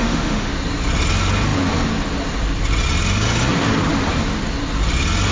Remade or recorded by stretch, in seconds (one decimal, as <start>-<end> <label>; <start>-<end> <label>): 0.0-0.5 remade; 0.5-5.3 recorded